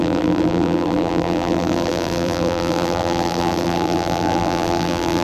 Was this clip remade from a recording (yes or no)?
yes